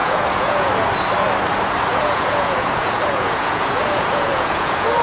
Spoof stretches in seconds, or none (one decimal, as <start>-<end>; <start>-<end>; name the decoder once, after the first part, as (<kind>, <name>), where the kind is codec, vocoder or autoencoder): 0.0-0.7 (vocoder, Vocos); 1.9-5.0